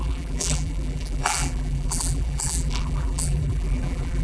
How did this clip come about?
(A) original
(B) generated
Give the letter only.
B